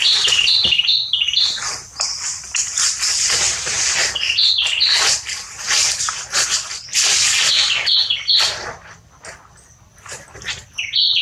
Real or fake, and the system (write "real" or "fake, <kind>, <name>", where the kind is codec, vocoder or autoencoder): real